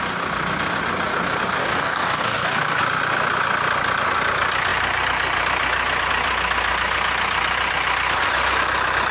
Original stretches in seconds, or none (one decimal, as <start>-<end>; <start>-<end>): 0.0-1.6; 2.8-9.1